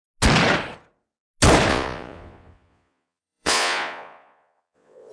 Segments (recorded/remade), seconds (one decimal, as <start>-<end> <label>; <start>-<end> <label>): 0.0-1.7 recorded; 1.7-5.1 remade

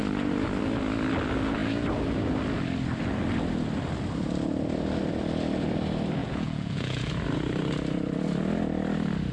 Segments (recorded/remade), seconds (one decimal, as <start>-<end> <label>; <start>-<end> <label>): 0.0-6.2 recorded; 6.2-7.1 remade; 7.1-9.3 recorded